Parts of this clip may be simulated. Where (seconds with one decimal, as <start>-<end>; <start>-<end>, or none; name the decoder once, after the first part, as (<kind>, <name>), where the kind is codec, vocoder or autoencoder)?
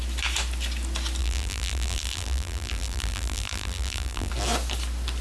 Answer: 1.2-4.3 (vocoder, BigVGAN v2)